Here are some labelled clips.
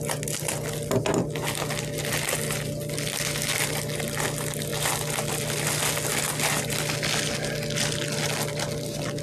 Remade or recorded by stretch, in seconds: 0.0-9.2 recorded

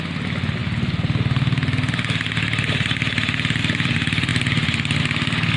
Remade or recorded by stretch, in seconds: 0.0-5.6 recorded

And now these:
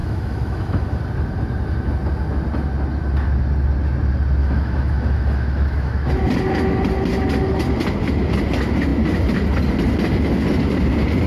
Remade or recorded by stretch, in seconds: 0.0-1.0 remade; 1.0-4.4 recorded; 4.4-6.1 remade; 6.1-11.3 recorded

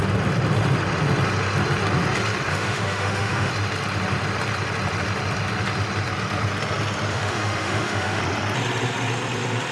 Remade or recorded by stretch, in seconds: 0.0-2.5 recorded; 2.5-3.5 remade; 3.5-7.1 recorded; 7.1-8.2 remade; 8.2-9.7 recorded

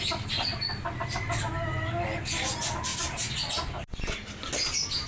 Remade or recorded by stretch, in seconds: 0.0-5.1 recorded

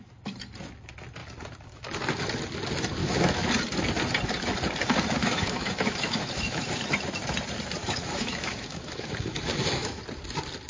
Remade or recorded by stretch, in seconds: 0.0-3.0 recorded; 3.0-3.5 remade; 3.5-5.2 recorded; 5.2-6.7 remade; 6.7-7.8 recorded; 7.8-10.0 remade; 10.0-10.7 recorded

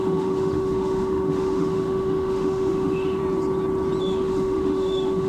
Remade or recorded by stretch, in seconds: 0.0-3.2 remade; 3.2-4.0 recorded; 4.0-5.3 remade